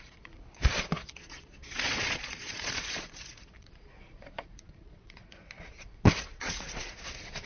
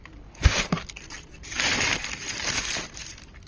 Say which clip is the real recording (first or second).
second